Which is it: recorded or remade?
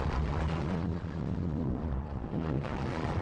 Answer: remade